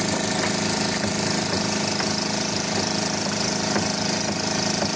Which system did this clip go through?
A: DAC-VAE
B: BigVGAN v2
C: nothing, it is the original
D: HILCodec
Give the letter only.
C